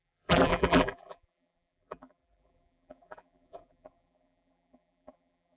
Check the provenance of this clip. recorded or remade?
remade